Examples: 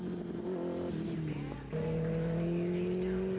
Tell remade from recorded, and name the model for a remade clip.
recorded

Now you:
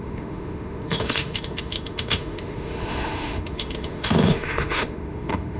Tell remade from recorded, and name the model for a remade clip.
remade, autoencoder, DAC-VAE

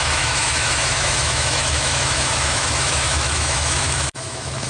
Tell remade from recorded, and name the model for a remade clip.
remade, autoencoder, DAC-VAE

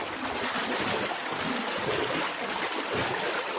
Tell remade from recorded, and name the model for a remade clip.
recorded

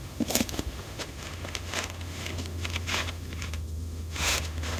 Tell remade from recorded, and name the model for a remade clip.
remade, autoencoder, DAC-VAE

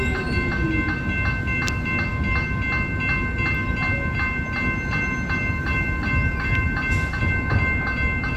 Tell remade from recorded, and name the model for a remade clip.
recorded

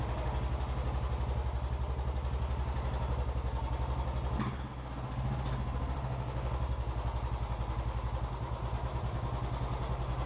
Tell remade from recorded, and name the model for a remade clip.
recorded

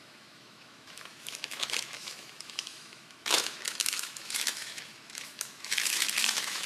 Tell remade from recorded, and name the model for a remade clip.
remade, autoencoder, DAC-VAE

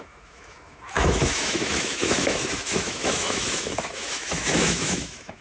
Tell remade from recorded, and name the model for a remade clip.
remade, autoencoder, DAC-VAE